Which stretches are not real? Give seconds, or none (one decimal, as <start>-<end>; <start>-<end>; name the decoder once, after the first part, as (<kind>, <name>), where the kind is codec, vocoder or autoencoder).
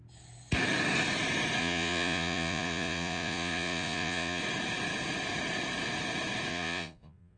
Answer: 1.6-4.4 (vocoder, Vocos); 6.5-7.4